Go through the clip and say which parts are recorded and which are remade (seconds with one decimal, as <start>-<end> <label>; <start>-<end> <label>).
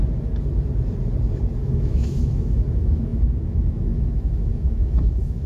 0.0-1.6 recorded; 1.6-5.5 remade